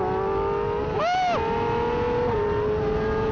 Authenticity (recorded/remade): recorded